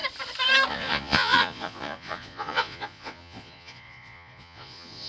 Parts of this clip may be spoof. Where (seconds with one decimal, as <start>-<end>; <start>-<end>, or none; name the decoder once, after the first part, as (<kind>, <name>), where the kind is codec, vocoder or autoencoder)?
0.7-5.1 (vocoder, Vocos)